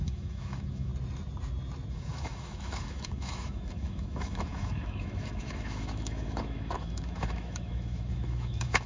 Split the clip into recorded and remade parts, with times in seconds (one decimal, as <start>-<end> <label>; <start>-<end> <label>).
0.0-0.9 remade; 0.9-1.9 recorded; 1.9-8.9 remade